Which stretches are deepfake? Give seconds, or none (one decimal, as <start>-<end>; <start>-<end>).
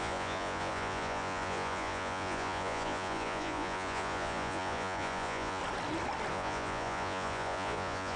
0.0-5.6; 6.3-8.2